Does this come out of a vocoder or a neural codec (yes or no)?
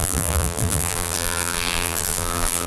yes